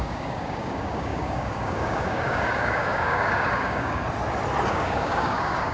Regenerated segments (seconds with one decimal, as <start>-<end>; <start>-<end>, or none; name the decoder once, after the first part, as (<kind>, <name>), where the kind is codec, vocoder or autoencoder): 0.0-4.0 (codec, DAC); 4.7-5.7